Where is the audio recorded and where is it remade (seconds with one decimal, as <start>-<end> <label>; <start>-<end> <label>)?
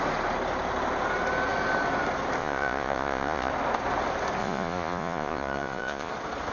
0.0-2.4 recorded; 2.4-3.5 remade; 3.5-4.4 recorded; 4.4-6.1 remade; 6.1-6.5 recorded